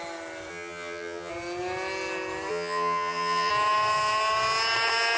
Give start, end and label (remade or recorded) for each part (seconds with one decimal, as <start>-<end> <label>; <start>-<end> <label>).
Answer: 0.0-0.5 recorded; 0.5-1.3 remade; 1.3-2.5 recorded; 2.5-3.5 remade; 3.5-5.2 recorded